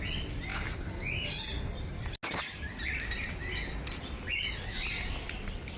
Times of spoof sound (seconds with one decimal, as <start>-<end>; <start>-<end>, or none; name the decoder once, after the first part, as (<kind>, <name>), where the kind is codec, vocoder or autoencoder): none

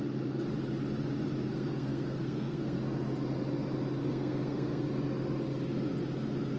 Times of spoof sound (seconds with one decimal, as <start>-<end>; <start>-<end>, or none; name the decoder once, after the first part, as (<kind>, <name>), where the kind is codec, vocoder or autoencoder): 1.5-2.8 (codec, SNAC); 4.0-4.8

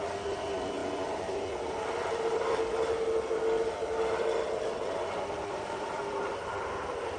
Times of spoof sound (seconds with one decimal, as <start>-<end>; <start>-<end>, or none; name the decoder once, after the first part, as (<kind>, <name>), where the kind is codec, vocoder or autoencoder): none

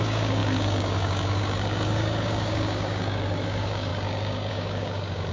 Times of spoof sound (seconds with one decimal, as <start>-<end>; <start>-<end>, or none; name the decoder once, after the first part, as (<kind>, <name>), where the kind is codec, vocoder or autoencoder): 0.0-5.3 (codec, DAC)

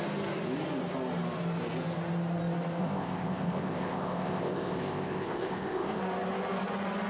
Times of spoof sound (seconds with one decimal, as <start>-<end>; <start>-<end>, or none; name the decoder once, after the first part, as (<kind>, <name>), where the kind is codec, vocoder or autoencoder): 2.8-6.0 (codec, ZipCodec)

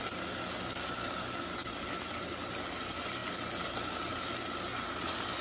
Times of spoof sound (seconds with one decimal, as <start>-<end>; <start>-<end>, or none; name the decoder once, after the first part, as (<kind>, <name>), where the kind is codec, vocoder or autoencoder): 1.6-2.1 (vocoder, BigVGAN v2)